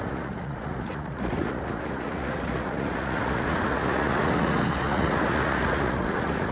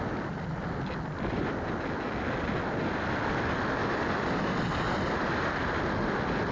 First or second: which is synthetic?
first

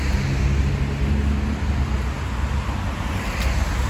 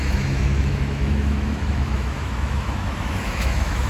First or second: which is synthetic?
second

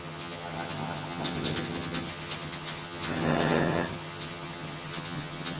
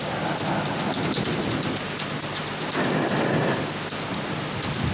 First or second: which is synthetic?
first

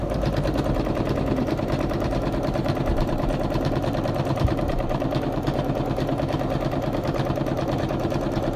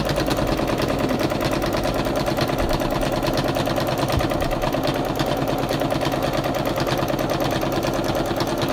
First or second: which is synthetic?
first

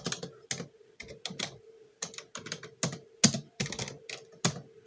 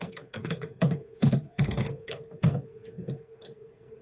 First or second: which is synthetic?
second